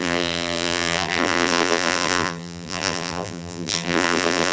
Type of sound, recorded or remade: remade